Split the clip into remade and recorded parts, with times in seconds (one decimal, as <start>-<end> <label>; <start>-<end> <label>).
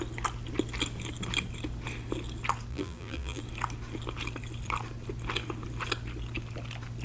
0.0-2.7 recorded; 2.7-3.4 remade; 3.4-7.0 recorded